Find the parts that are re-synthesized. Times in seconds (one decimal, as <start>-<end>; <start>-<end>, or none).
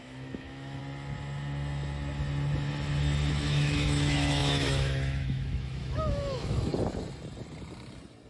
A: 0.0-0.8; 3.3-6.7